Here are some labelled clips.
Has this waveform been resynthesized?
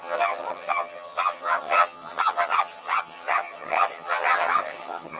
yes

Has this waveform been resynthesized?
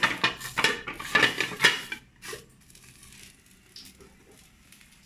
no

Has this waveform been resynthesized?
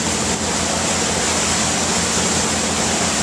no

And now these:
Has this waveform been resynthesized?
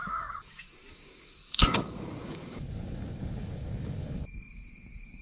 yes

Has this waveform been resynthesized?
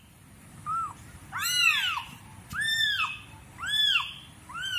yes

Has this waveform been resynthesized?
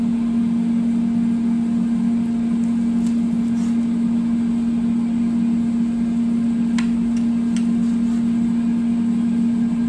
no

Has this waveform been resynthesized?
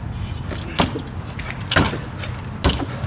no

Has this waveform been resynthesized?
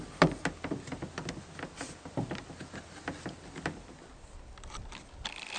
no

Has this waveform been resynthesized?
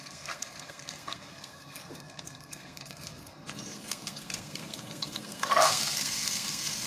yes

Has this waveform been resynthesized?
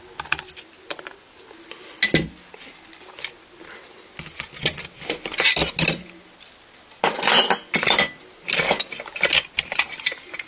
no